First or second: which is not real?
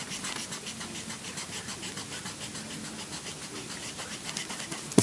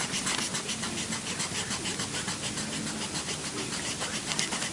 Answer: second